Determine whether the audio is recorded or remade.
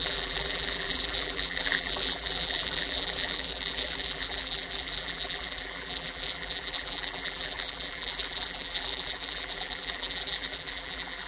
remade